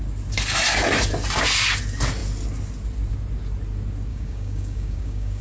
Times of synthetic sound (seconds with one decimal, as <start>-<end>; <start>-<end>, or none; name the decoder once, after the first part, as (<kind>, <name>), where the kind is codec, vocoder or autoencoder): 4.1-5.4 (codec, DAC)

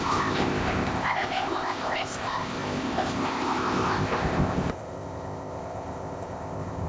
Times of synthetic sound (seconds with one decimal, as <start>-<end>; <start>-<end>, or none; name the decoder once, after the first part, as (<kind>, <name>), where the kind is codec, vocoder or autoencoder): 0.0-6.9 (codec, ZipCodec)

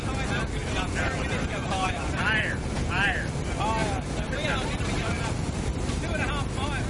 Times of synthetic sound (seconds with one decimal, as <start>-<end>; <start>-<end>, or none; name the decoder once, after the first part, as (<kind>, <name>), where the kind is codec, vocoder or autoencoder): 0.6-3.4 (vocoder, BigVGAN v2); 3.8-6.3

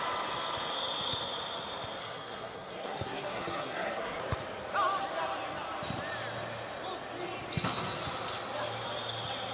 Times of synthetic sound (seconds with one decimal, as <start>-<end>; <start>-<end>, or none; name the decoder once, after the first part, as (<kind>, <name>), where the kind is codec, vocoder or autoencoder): 2.0-4.2 (codec, SNAC)

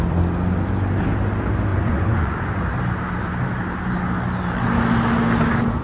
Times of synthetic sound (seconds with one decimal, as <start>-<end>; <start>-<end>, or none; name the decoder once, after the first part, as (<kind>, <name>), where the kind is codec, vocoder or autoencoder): 1.7-2.6 (vocoder, Vocos)